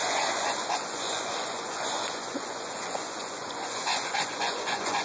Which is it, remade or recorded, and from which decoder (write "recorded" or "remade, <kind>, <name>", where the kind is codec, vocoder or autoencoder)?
remade, vocoder, Vocos